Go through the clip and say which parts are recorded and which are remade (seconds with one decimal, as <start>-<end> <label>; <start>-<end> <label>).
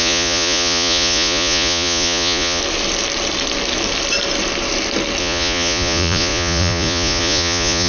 0.0-2.6 remade; 2.6-5.2 recorded; 5.2-7.9 remade